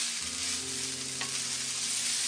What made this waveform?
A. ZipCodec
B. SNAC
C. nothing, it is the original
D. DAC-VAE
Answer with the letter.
C